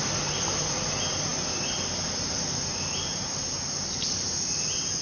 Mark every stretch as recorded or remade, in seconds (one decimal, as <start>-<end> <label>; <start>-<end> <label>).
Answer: 0.0-5.0 recorded